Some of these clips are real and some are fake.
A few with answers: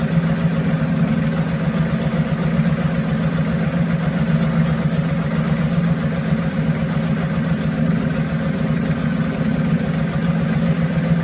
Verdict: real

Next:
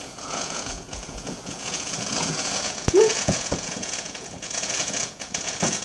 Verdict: fake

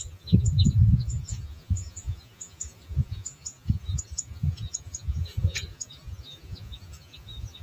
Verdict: fake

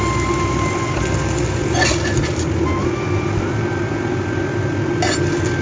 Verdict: real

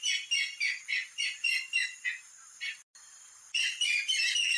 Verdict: real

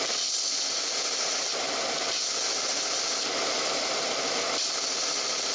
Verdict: real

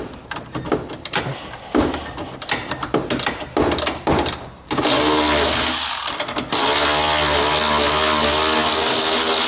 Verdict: real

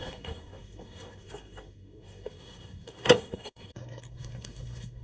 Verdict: fake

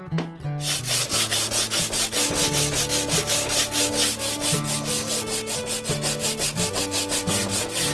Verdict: real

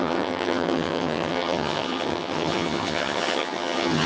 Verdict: fake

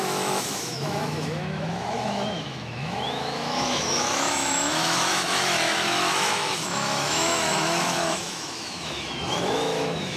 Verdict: fake